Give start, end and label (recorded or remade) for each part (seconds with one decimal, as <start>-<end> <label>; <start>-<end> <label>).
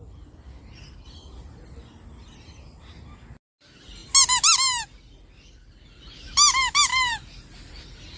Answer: 0.0-8.2 recorded